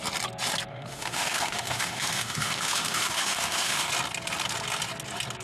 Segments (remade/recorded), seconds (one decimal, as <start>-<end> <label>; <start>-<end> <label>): 0.0-0.7 recorded; 0.7-3.9 remade; 3.9-5.4 recorded